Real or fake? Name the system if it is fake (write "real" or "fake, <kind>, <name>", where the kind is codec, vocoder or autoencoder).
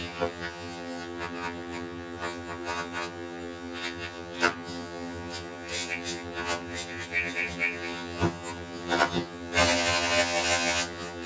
fake, vocoder, HiFi-GAN